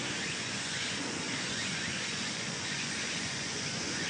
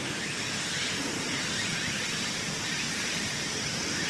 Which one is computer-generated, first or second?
first